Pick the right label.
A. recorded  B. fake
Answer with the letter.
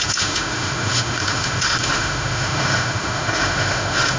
B